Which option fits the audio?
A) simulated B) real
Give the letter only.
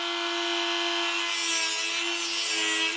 B